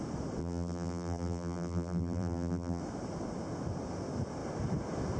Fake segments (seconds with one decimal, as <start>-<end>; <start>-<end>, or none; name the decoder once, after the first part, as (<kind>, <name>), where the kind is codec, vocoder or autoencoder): 0.4-2.8 (vocoder, BigVGAN v2)